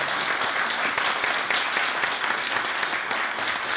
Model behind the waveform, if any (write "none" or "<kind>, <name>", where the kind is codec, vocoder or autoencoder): none